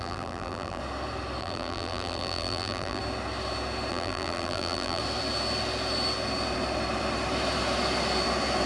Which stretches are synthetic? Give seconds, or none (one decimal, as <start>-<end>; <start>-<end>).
0.0-0.8; 1.4-3.0; 3.9-5.0